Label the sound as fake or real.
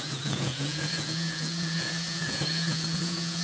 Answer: fake